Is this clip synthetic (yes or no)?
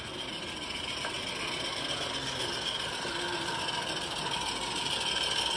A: no